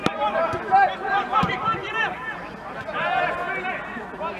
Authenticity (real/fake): real